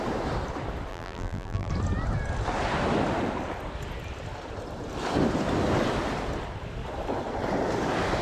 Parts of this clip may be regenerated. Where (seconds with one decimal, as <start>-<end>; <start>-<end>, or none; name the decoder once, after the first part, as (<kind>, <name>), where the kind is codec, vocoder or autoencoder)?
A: 0.9-1.7 (vocoder, BigVGAN v2)